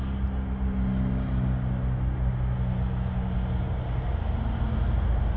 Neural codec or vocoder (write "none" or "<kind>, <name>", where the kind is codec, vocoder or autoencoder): none